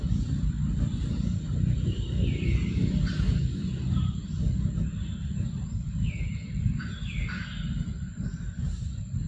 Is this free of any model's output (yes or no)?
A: yes